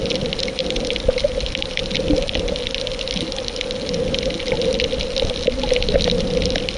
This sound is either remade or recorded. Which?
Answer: recorded